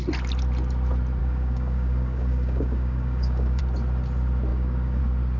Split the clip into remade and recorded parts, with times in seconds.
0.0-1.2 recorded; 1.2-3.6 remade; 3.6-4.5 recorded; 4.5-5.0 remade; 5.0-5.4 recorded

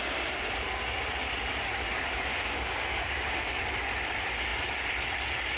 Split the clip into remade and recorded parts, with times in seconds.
0.0-2.3 recorded; 2.3-3.6 remade; 3.6-5.6 recorded

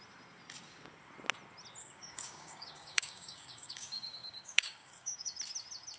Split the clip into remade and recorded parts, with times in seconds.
0.0-1.8 recorded; 1.8-5.4 remade; 5.4-6.0 recorded

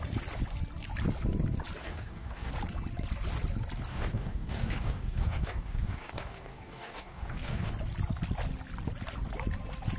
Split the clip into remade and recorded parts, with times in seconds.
0.0-1.8 recorded; 1.8-2.5 remade; 2.5-3.9 recorded; 3.9-7.7 remade; 7.7-10.0 recorded